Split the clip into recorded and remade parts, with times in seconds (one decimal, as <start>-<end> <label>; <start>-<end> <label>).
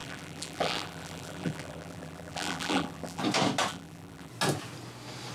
0.0-3.2 remade; 3.2-3.7 recorded; 3.7-4.3 remade; 4.3-5.3 recorded